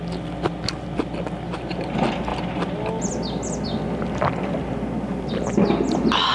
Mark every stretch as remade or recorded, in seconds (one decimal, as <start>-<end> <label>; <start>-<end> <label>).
0.0-6.3 recorded